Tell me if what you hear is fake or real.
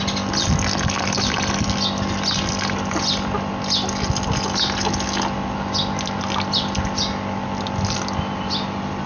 real